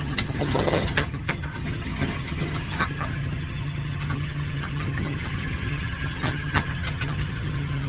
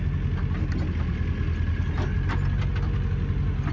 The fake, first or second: first